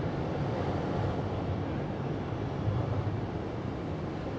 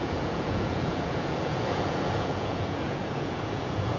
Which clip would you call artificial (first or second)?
second